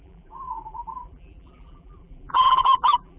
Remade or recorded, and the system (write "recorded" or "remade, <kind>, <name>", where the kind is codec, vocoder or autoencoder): remade, vocoder, BigVGAN v2